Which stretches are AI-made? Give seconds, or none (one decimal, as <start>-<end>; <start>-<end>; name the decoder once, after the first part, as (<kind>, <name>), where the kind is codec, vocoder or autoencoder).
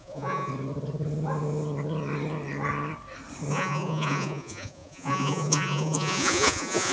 0.0-0.5 (vocoder, Vocos); 3.5-6.9